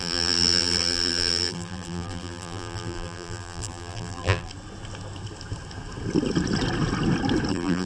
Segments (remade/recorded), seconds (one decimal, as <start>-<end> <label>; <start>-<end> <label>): 0.0-4.5 remade; 4.5-7.5 recorded; 7.5-7.9 remade